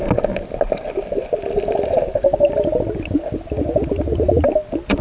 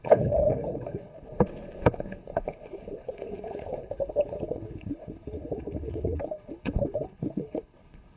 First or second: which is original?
first